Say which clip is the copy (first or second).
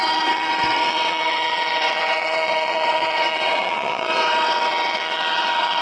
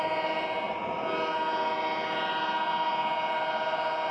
first